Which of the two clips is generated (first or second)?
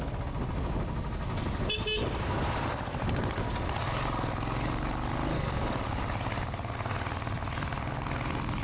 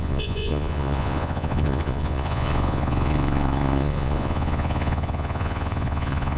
second